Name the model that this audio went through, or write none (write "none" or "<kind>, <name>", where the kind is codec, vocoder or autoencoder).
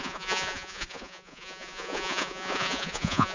vocoder, Vocos